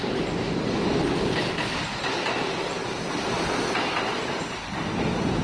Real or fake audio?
real